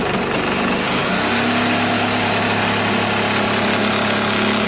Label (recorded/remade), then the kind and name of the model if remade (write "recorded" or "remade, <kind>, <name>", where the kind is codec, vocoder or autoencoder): recorded